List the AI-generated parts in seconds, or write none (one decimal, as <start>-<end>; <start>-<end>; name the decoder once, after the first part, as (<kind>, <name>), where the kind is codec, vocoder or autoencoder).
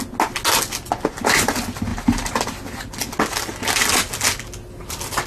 none